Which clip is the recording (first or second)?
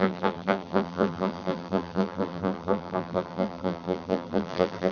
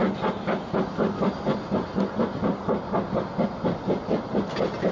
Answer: second